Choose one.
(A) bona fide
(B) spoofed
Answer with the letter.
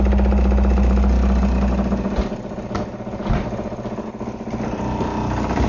A